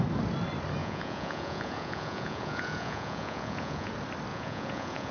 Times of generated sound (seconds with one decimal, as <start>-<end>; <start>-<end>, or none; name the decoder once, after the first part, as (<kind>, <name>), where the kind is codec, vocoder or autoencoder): 0.8-3.9 (vocoder, Vocos); 4.3-5.1